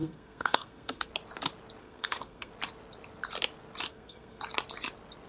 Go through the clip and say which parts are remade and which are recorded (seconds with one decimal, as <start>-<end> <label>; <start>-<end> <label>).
0.0-1.1 remade; 1.1-1.8 recorded; 1.8-2.5 remade; 2.5-3.9 recorded; 3.9-4.4 remade; 4.4-5.3 recorded